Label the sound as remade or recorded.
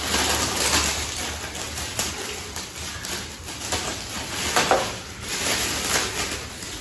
recorded